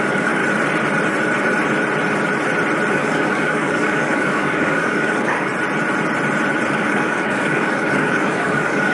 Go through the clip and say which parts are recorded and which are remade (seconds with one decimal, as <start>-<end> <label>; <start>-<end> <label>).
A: 0.0-0.4 remade; 0.4-2.9 recorded; 2.9-5.5 remade; 5.5-6.7 recorded; 6.7-8.9 remade

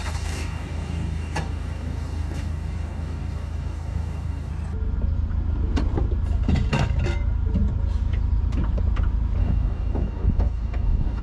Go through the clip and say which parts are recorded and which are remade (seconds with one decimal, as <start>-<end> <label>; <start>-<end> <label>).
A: 0.0-4.5 remade; 4.5-9.4 recorded; 9.4-11.2 remade

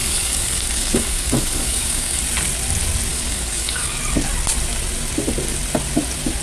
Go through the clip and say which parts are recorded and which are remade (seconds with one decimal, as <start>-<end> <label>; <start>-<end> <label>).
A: 0.0-2.2 remade; 2.2-3.1 recorded; 3.1-4.0 remade; 4.0-6.4 recorded